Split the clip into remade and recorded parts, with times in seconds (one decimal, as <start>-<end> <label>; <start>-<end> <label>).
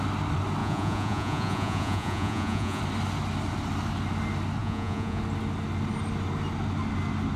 0.0-0.6 recorded; 0.6-2.8 remade; 2.8-4.6 recorded; 4.6-5.2 remade; 5.2-7.4 recorded